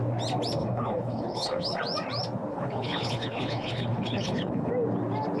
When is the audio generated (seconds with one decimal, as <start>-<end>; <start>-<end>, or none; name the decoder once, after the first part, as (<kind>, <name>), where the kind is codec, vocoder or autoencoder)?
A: 0.6-1.8 (codec, HILCodec); 2.5-4.7